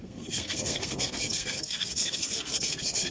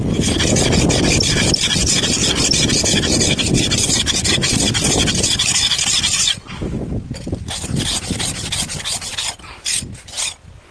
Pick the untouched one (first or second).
second